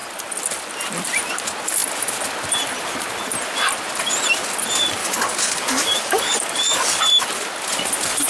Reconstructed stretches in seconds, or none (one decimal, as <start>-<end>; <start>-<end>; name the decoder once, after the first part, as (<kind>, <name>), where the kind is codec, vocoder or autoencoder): 5.0-7.0 (codec, DAC)